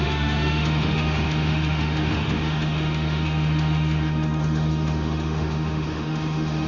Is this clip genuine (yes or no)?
no